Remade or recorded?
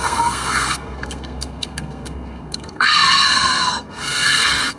remade